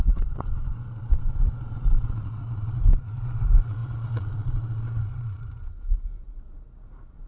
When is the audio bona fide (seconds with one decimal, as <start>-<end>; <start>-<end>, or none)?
none